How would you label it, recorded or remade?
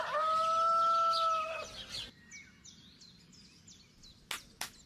recorded